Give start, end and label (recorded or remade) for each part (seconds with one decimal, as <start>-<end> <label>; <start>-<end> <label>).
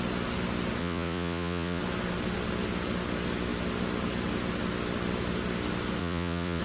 0.0-0.8 recorded; 0.8-1.8 remade; 1.8-6.0 recorded; 6.0-6.6 remade